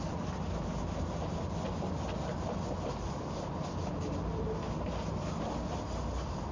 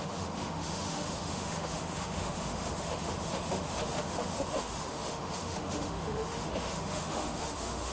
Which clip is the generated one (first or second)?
second